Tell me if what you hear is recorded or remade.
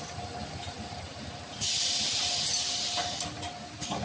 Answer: recorded